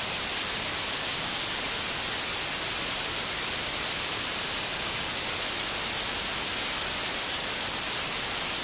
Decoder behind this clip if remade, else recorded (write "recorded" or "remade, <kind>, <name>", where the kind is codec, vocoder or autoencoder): recorded